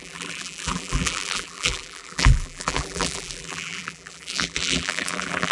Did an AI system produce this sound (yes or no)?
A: yes